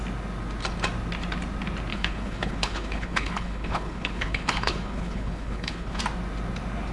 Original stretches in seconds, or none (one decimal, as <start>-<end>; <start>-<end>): 0.0-1.9; 6.0-6.9